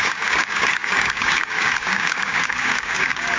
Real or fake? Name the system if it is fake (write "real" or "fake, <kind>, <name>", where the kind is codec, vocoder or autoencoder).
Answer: fake, codec, DAC